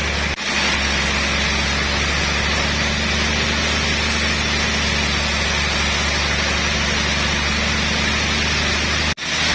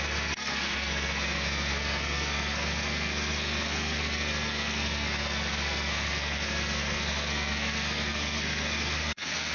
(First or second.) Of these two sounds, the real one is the first